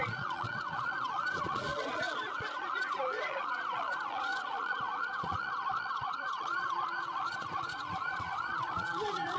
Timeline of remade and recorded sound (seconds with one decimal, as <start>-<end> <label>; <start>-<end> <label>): 0.0-9.4 remade